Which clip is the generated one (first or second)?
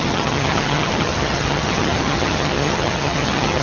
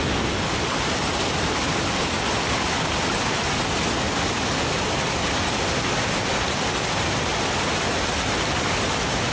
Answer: first